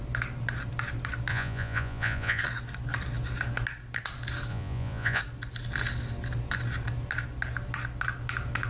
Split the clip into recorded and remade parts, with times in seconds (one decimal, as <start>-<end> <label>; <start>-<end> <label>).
0.0-1.3 recorded; 1.3-2.4 remade; 2.4-4.5 recorded; 4.5-5.2 remade; 5.2-8.7 recorded